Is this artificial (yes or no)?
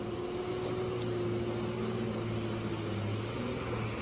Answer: no